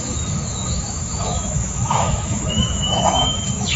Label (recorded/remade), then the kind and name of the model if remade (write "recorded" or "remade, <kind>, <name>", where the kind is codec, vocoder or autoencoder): remade, autoencoder, DAC-VAE